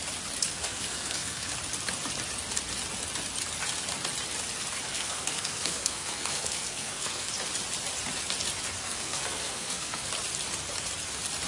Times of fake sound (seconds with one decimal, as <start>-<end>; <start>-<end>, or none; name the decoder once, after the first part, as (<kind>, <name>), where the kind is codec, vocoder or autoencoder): 0.5-1.5 (codec, SNAC); 4.9-7.3; 8.8-10.1